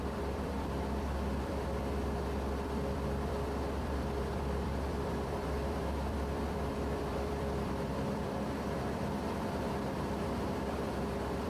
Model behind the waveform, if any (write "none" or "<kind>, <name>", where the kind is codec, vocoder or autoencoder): vocoder, BigVGAN v2